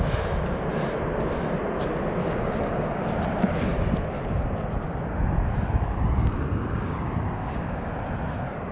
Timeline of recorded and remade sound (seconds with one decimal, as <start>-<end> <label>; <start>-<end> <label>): 0.0-2.2 recorded; 2.2-3.0 remade; 3.0-6.2 recorded; 6.2-7.9 remade; 7.9-8.7 recorded